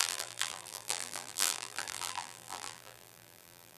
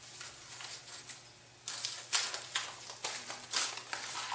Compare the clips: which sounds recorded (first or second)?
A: second